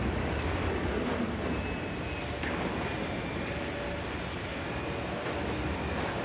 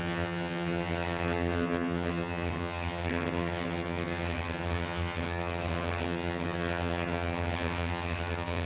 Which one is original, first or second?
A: first